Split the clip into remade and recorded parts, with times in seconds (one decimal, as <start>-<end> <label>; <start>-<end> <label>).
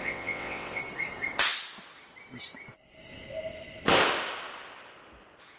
0.0-0.8 remade; 0.8-5.6 recorded